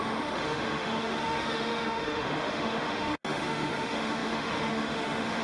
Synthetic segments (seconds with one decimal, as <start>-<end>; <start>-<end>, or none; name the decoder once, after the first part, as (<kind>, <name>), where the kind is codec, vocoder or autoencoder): 0.0-5.4 (autoencoder, DAC-VAE)